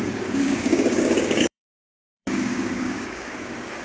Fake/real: fake